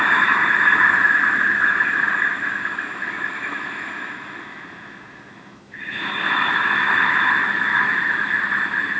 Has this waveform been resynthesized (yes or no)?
yes